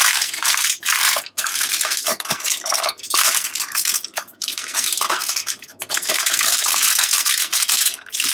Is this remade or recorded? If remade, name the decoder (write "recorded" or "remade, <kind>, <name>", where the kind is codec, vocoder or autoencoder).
remade, codec, SNAC